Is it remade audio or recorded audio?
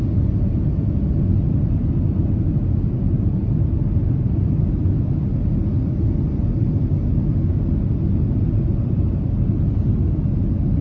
recorded